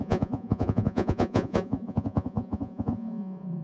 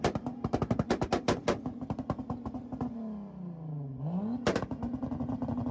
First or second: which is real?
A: second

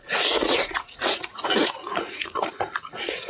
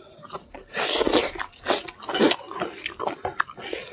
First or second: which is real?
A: second